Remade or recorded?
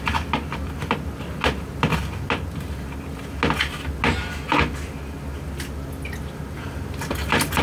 recorded